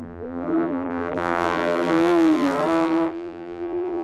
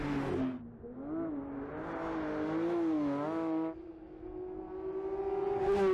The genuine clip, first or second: second